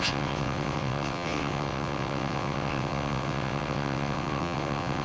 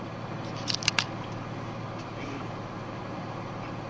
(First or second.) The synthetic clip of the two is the first